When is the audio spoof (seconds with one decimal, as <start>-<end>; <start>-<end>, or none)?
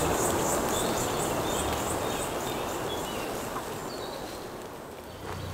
3.0-5.5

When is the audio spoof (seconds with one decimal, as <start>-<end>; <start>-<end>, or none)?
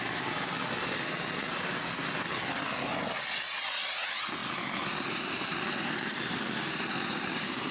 4.4-7.7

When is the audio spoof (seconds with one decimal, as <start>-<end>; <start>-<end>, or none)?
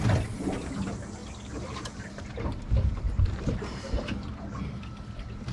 1.2-4.5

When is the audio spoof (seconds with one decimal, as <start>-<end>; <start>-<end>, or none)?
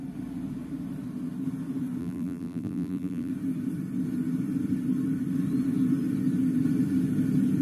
2.0-3.3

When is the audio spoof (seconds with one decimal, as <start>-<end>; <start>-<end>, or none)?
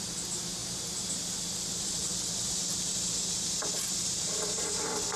none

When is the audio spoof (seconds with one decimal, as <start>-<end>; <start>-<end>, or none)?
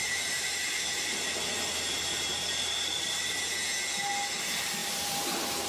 0.0-3.4; 4.8-5.7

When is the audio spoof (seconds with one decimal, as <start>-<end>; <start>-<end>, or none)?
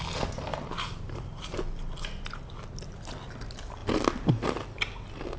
0.5-1.6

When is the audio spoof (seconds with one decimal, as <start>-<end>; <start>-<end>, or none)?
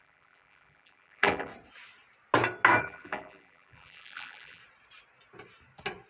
0.0-1.5; 2.8-4.6